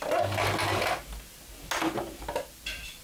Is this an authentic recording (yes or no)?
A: yes